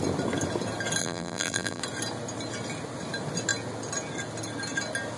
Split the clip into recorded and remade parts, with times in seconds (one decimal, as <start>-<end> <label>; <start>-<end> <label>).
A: 0.0-1.0 recorded; 1.0-1.8 remade; 1.8-5.2 recorded